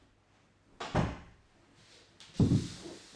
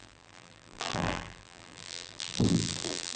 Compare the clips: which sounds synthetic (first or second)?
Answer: second